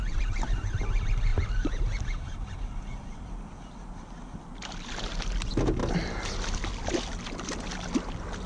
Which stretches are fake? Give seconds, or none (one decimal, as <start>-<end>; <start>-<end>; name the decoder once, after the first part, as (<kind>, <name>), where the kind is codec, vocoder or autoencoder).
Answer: none